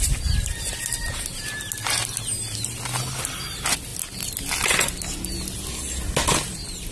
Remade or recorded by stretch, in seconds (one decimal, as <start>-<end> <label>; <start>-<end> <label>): 0.0-6.9 recorded